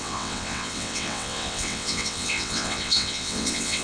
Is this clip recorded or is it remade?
remade